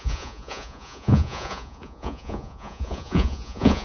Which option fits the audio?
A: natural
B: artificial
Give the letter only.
B